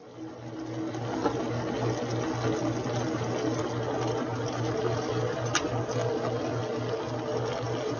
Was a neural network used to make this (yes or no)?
no